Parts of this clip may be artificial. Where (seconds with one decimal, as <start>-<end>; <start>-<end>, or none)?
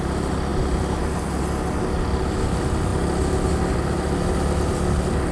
none